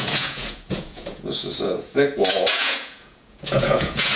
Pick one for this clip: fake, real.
fake